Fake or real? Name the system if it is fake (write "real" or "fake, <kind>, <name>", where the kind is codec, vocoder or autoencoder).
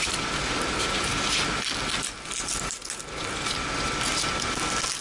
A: real